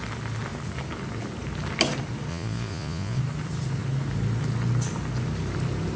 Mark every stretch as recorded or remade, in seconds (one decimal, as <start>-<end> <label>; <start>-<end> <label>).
0.0-2.3 recorded; 2.3-3.2 remade; 3.2-6.0 recorded